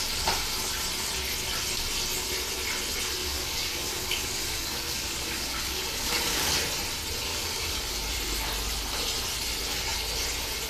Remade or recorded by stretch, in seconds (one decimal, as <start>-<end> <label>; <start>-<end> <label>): 0.0-3.2 recorded; 3.2-6.5 remade; 6.5-7.3 recorded; 7.3-7.9 remade; 7.9-10.7 recorded